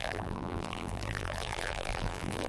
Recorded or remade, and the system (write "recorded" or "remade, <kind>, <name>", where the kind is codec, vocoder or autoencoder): remade, vocoder, BigVGAN v2